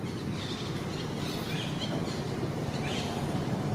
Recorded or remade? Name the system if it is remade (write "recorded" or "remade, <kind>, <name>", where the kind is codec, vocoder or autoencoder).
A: recorded